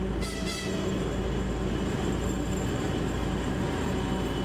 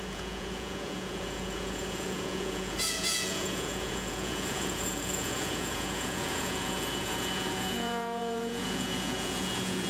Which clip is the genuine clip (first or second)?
first